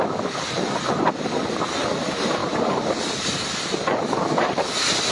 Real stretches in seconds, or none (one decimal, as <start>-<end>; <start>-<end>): 0.0-2.4